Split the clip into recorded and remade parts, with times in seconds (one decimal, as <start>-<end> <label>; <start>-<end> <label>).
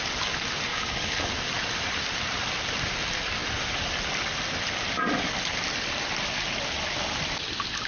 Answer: 0.0-0.7 recorded; 0.7-1.3 remade; 1.3-7.9 recorded